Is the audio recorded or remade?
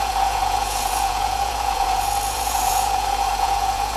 remade